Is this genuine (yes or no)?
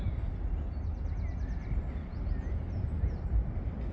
yes